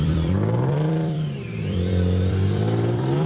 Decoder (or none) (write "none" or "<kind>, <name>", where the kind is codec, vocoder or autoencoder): vocoder, BigVGAN v2